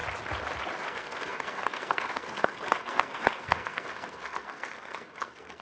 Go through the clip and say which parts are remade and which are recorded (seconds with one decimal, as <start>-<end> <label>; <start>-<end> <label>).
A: 0.0-0.8 recorded; 0.8-5.6 remade